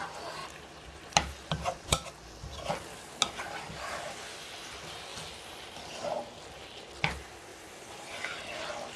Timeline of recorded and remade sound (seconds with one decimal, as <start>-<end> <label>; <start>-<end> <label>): 0.0-0.4 recorded; 0.4-1.0 remade; 1.0-7.5 recorded; 7.5-8.1 remade; 8.1-9.0 recorded